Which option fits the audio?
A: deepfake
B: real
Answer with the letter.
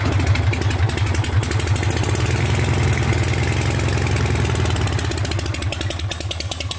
B